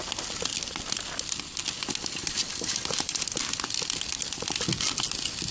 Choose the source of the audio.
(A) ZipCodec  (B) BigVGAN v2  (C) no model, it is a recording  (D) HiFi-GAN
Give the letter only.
C